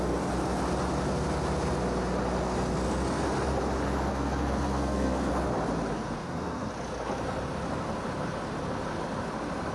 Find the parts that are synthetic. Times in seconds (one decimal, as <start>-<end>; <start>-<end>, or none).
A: 4.1-5.3; 6.2-6.7